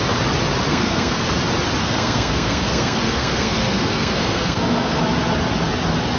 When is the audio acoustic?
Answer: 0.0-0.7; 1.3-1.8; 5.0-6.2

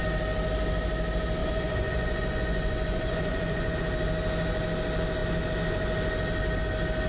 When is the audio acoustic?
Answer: 0.0-1.4; 3.8-7.1